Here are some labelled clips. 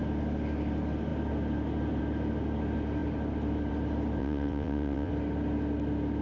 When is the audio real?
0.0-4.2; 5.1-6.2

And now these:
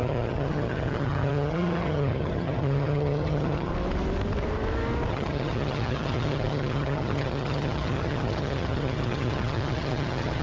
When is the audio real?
3.7-5.1

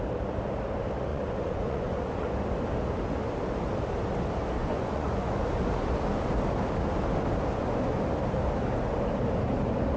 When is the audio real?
0.0-1.1; 2.3-4.6; 5.4-7.5; 8.0-10.0